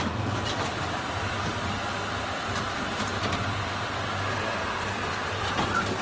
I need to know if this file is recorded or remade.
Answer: remade